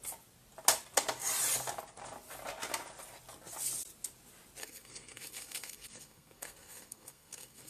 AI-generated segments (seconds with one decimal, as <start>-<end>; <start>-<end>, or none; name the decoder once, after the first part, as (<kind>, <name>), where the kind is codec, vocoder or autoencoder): 4.6-7.7 (codec, SNAC)